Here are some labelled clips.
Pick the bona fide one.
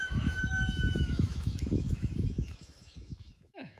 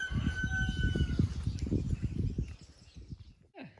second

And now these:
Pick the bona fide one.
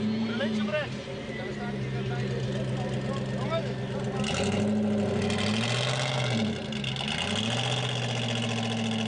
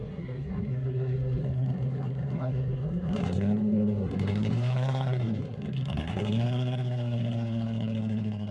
first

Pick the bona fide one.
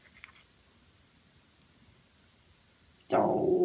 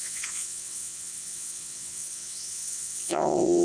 first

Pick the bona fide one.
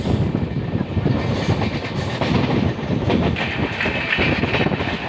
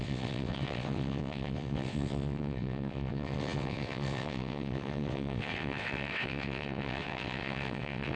first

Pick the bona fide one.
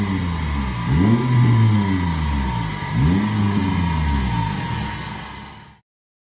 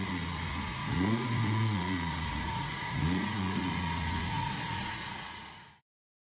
first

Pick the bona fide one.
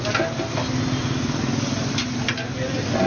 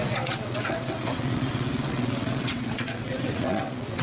first